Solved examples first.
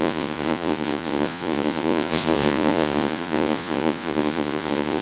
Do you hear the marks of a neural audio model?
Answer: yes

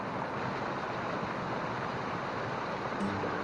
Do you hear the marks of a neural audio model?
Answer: no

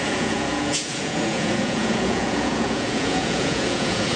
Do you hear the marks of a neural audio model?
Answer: yes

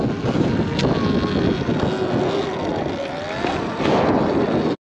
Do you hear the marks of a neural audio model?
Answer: no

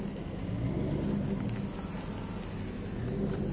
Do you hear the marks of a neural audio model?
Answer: no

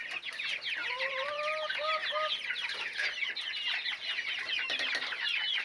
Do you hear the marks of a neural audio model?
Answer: no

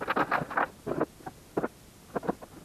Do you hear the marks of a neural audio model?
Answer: no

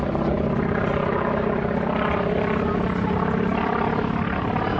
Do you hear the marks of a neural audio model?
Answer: no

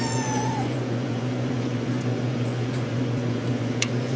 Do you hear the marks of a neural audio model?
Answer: yes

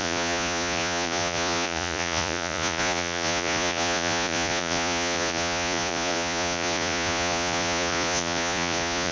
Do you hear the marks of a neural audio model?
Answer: yes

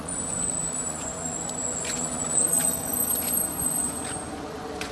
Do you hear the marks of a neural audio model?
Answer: yes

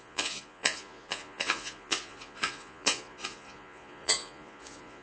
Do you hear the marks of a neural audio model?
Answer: yes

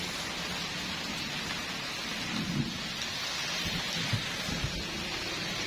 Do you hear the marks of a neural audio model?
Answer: no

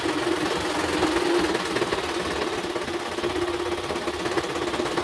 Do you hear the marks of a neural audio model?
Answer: no